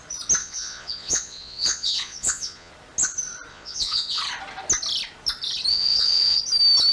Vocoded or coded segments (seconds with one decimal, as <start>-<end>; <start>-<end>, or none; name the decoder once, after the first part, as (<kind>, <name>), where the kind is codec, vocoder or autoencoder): 0.4-2.7 (vocoder, Vocos); 3.5-4.2; 5.7-6.4